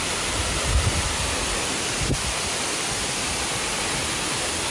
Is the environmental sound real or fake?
real